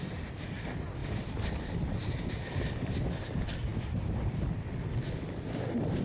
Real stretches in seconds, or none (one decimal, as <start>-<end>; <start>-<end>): 0.0-6.0